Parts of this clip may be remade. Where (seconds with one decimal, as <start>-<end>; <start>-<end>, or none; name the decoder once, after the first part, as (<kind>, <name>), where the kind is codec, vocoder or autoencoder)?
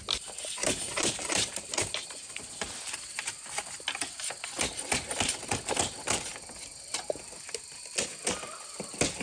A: 0.6-4.4 (vocoder, BigVGAN v2)